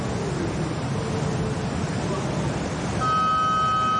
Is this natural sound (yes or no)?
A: yes